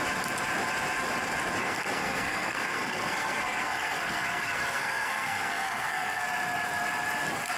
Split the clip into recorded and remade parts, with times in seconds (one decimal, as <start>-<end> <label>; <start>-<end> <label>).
0.0-1.6 recorded; 1.6-6.2 remade; 6.2-7.6 recorded